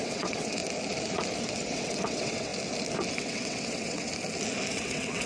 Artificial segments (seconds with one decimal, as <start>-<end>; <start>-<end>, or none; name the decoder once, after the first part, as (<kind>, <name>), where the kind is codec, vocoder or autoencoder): 0.0-0.6 (vocoder, WaveNeXt); 1.4-2.5; 3.2-4.1; 4.7-5.3